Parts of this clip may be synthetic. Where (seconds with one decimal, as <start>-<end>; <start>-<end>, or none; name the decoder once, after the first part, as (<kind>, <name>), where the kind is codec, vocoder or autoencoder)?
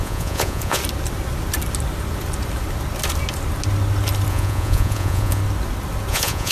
0.0-0.8 (vocoder, Vocos); 4.3-5.4; 6.1-6.5